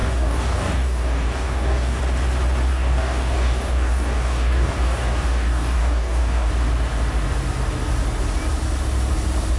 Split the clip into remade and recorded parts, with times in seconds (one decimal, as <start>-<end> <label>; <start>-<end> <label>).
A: 0.0-2.0 remade; 2.0-2.7 recorded; 2.7-6.5 remade; 6.5-9.6 recorded